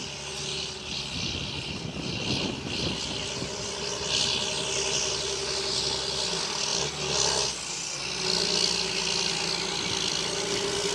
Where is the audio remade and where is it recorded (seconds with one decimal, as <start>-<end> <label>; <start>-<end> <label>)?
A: 0.0-10.9 recorded